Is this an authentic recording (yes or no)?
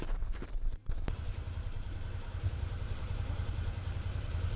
no